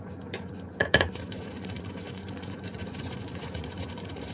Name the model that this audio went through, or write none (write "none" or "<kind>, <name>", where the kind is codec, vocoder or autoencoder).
vocoder, Vocos